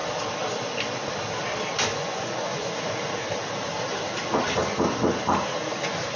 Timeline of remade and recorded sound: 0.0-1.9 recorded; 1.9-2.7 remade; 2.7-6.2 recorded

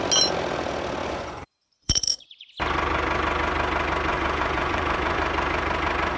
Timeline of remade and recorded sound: 0.0-1.0 recorded; 1.0-2.5 remade; 2.5-4.1 recorded; 4.1-5.2 remade; 5.2-6.2 recorded

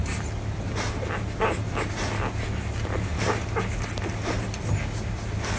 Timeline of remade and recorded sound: 0.0-5.6 recorded

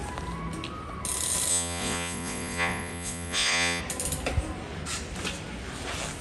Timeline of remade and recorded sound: 0.0-1.5 recorded; 1.5-3.8 remade; 3.8-6.2 recorded

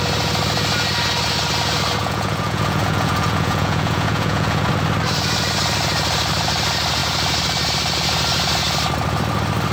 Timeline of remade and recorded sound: 0.0-2.0 recorded; 2.0-4.7 remade; 4.7-9.7 recorded

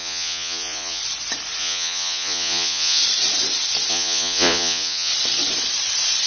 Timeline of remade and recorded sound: 0.0-1.0 remade; 1.0-1.6 recorded; 1.6-3.0 remade; 3.0-3.9 recorded; 3.9-5.1 remade; 5.1-6.3 recorded

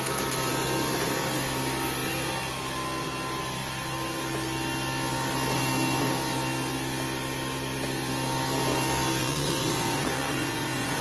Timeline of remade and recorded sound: 0.0-9.2 recorded; 9.2-11.0 remade